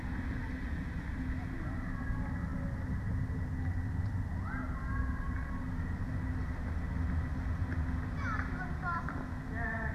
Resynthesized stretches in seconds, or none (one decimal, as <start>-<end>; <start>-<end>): none